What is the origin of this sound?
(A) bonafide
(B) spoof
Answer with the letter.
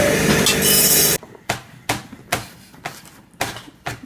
A